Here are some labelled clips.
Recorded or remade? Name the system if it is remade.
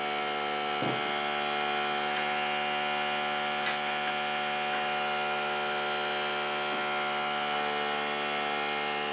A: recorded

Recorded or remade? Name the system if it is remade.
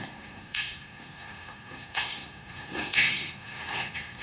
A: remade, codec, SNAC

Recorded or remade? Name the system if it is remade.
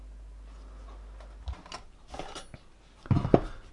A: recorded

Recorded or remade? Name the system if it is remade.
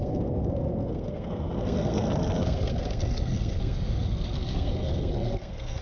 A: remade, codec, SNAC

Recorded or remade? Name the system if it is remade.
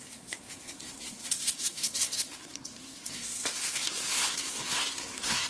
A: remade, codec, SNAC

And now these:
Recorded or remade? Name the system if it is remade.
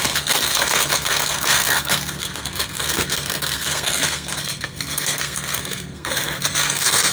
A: remade, codec, SNAC